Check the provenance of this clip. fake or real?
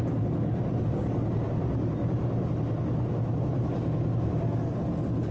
real